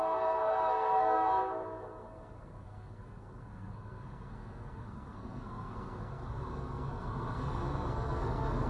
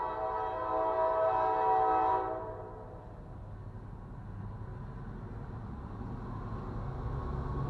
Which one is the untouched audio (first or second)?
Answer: second